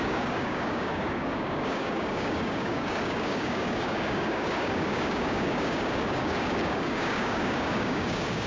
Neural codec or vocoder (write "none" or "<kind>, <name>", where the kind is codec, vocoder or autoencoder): codec, DAC